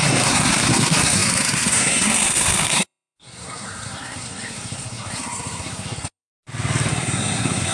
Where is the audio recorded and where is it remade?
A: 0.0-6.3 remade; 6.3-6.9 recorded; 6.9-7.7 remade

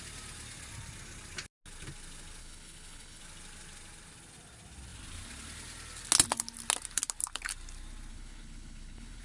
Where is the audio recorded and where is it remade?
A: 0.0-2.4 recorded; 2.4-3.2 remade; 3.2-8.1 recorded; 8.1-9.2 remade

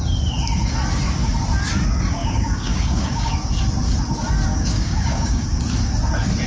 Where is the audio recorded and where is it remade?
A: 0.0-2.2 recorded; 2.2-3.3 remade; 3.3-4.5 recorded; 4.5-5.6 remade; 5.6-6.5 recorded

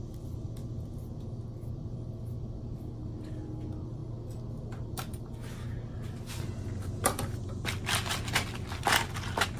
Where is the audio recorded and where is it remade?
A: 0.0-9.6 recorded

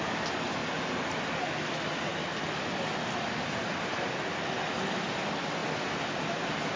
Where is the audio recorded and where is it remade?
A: 0.0-0.6 remade; 0.6-1.3 recorded; 1.3-2.1 remade; 2.1-3.5 recorded; 3.5-5.6 remade; 5.6-6.2 recorded; 6.2-6.8 remade

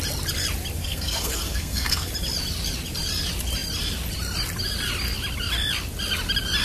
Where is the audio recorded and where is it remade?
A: 0.0-0.8 recorded; 0.8-2.1 remade; 2.1-6.6 recorded

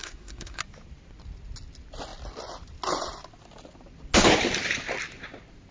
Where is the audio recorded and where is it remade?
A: 0.0-0.6 remade; 0.6-5.7 recorded